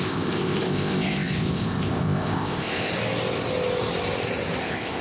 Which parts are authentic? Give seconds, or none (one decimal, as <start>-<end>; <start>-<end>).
2.9-4.6

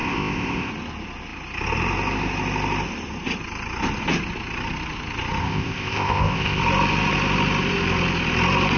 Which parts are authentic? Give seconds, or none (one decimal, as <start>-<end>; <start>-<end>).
0.7-5.4; 6.6-8.8

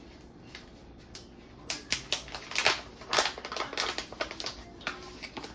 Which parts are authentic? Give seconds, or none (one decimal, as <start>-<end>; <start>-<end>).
0.0-5.5

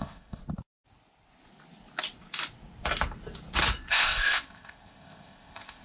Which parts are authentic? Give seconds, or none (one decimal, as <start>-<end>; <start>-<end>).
0.4-3.9

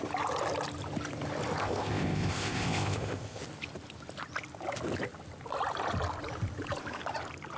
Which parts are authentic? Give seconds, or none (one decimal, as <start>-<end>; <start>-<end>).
0.0-1.6; 3.4-7.6